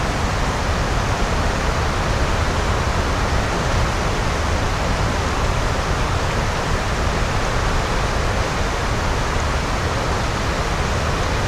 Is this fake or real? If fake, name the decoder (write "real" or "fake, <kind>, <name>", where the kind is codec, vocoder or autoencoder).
real